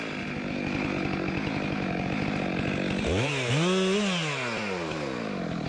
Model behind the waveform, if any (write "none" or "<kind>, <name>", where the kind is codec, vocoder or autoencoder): none